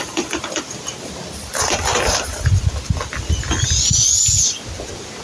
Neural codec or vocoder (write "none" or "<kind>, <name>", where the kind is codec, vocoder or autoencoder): none